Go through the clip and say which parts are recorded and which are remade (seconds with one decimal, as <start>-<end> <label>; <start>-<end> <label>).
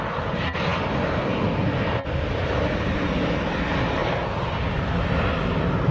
0.0-5.9 recorded